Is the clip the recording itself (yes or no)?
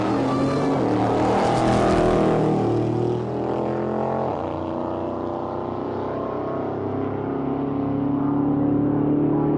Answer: yes